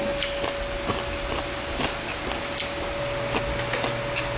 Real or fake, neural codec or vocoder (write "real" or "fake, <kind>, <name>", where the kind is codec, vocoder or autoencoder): real